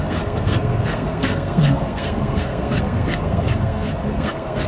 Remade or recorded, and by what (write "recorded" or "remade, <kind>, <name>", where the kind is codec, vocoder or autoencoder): remade, codec, SNAC